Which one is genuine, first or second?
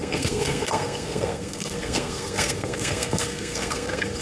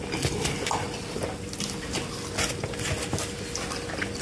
second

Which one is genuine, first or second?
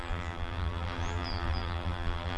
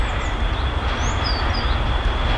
second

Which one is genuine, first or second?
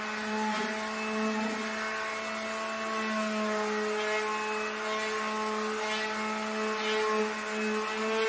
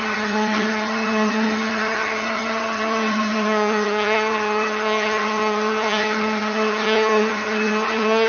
first